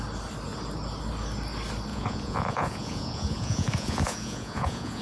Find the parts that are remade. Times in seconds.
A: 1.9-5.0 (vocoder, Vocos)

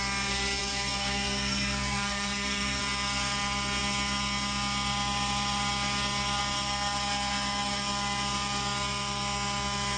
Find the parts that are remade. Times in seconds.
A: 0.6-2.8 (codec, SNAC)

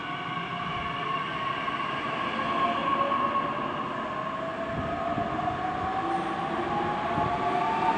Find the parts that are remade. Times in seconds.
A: none